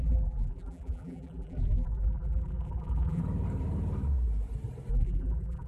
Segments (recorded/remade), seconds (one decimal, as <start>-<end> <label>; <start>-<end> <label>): 0.0-3.2 remade; 3.2-4.9 recorded; 4.9-5.7 remade